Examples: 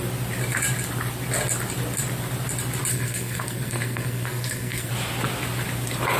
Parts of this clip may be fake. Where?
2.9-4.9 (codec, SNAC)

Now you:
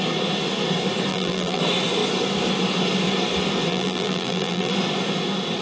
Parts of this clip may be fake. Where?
1.1-1.6 (vocoder, BigVGAN v2); 3.7-4.7

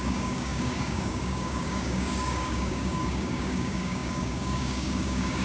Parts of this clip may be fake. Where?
0.0-5.4 (codec, DAC)

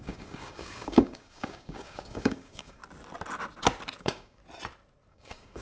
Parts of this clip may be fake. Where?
0.0-2.8 (codec, DAC); 4.0-4.4; 5.1-5.6

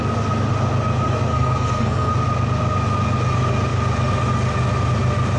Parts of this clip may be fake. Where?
1.3-2.1 (codec, SNAC)

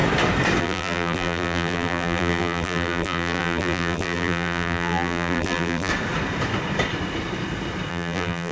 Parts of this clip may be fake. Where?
0.6-5.9 (vocoder, BigVGAN v2); 7.9-8.5

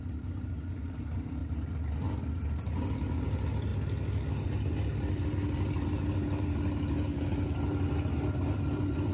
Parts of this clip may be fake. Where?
none